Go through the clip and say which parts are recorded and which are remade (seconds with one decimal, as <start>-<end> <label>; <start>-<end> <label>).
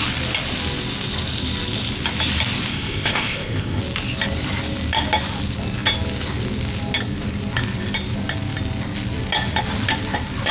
0.0-2.7 recorded; 2.7-3.8 remade; 3.8-10.5 recorded